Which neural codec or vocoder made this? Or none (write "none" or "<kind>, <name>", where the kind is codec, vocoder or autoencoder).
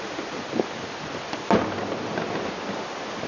none